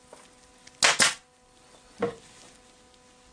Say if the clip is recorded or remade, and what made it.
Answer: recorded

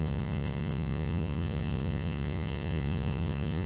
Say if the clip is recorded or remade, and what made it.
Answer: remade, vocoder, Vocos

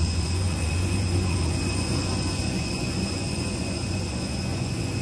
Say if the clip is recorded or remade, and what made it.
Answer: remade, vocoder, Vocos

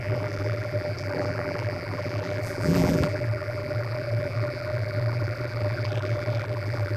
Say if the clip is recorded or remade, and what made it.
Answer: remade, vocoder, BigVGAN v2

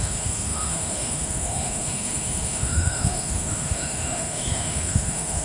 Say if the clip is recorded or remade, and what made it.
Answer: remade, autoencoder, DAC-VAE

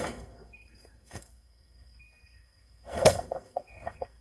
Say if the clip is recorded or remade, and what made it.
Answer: remade, codec, SNAC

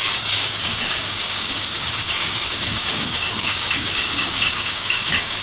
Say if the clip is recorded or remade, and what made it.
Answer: remade, codec, DAC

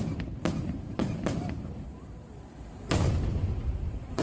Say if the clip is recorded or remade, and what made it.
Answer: remade, vocoder, BigVGAN v2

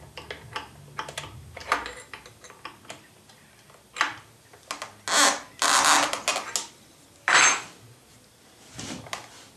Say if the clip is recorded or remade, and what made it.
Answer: recorded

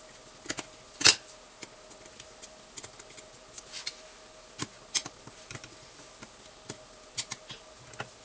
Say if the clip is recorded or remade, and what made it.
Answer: recorded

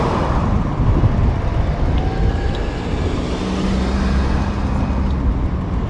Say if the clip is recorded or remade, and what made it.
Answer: recorded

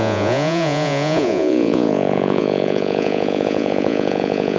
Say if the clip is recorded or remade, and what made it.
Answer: remade, vocoder, Vocos